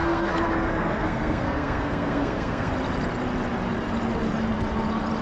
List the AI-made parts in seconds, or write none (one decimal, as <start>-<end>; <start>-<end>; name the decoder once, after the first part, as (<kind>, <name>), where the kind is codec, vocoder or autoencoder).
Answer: 0.0-2.7 (codec, SNAC)